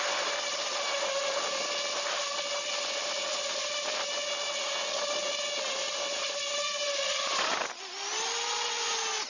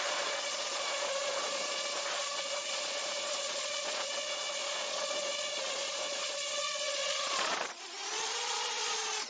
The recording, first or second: first